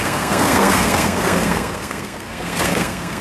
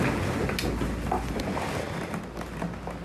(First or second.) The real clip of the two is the second